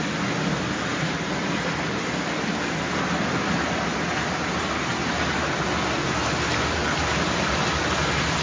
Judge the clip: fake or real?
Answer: real